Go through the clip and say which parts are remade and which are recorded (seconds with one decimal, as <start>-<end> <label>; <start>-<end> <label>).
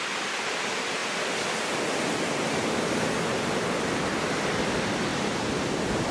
0.0-6.1 recorded